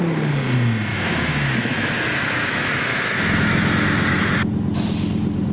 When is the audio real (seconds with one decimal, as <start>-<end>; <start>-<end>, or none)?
0.0-0.9; 4.2-5.5